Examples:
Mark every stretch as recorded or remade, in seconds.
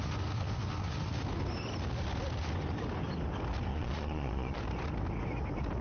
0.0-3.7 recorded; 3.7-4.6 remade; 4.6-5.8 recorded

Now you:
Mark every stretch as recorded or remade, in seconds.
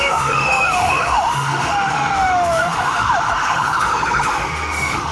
0.0-5.1 remade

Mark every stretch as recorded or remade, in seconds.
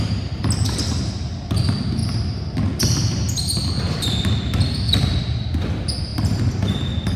0.0-7.2 recorded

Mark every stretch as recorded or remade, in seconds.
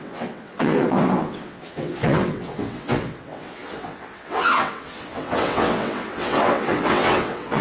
0.0-7.6 remade